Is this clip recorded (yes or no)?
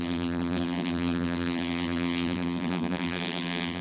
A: no